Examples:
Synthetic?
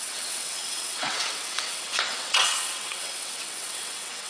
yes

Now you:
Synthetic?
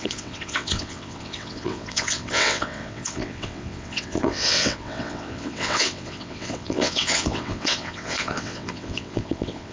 yes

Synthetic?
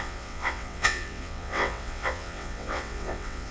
yes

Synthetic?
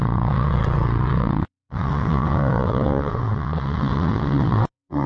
yes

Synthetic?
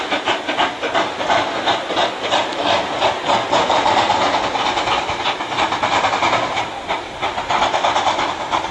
no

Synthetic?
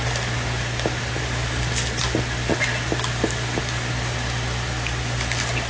no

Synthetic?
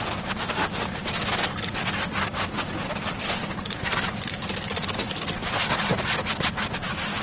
no